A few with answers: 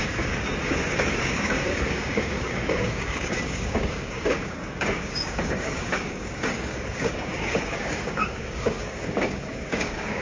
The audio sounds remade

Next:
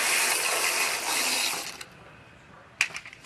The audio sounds recorded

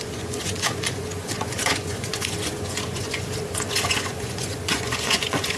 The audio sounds remade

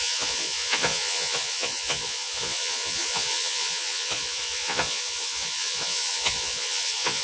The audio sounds remade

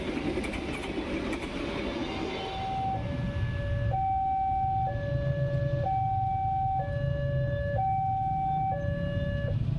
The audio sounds recorded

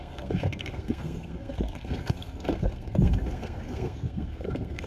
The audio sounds remade